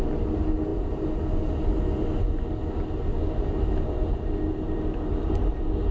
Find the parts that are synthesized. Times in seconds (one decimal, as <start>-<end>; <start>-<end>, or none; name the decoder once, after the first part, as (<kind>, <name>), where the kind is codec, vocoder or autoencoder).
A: none